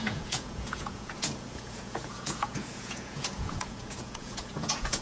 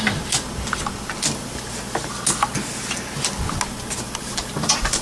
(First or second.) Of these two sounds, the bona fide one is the second